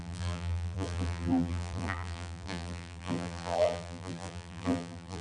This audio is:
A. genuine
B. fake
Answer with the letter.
B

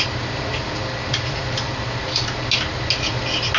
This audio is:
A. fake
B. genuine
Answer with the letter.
B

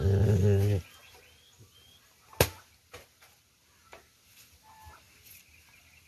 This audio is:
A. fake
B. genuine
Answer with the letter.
B